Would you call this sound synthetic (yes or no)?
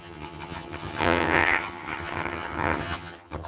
yes